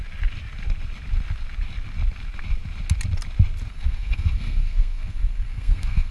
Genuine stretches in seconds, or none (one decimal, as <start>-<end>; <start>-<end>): 0.0-3.7